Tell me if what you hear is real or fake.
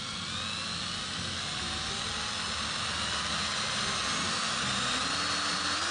real